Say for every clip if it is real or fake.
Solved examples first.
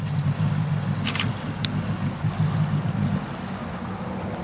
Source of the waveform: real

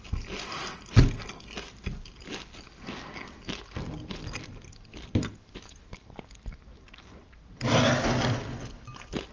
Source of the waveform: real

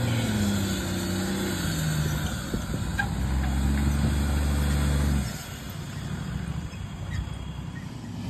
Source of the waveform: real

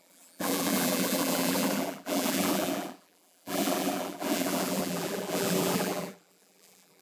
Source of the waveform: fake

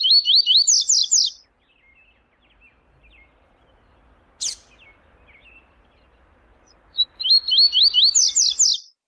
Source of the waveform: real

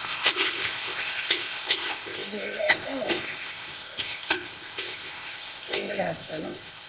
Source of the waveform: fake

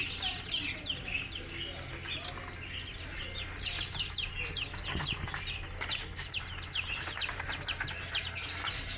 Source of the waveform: real